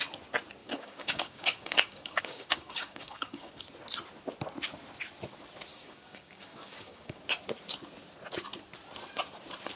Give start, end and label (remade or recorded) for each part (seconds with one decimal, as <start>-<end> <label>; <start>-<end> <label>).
0.0-0.6 recorded; 0.6-3.6 remade; 3.6-5.7 recorded; 5.7-7.2 remade; 7.2-9.8 recorded